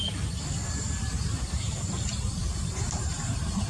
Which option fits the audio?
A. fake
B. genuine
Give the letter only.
A